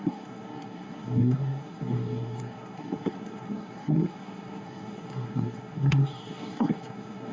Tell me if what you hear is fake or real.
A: fake